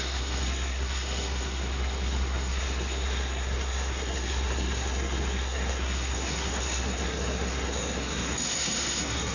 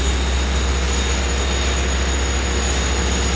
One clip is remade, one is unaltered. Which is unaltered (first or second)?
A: second